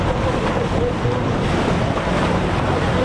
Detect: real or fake real